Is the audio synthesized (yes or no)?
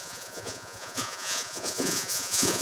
yes